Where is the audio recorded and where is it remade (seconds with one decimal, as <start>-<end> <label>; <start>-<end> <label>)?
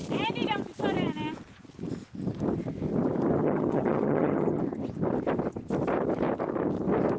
0.0-3.4 recorded; 3.4-4.6 remade; 4.6-7.2 recorded